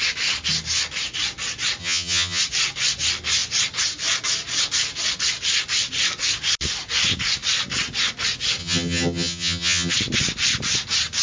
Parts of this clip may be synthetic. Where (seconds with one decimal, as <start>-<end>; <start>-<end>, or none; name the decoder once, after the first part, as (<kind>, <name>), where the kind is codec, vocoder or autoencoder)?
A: 1.8-2.4 (vocoder, HiFi-GAN); 8.6-9.9